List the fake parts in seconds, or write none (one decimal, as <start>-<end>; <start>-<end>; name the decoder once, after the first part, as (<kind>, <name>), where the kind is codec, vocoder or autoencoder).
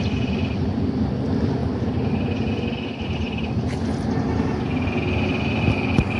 none